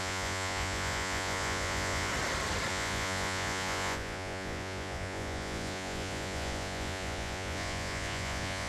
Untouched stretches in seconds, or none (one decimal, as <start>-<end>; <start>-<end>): 2.1-2.7